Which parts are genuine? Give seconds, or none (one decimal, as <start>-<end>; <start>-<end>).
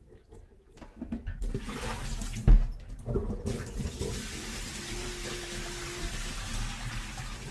0.0-7.5